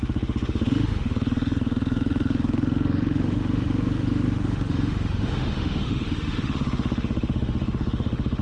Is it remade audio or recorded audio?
remade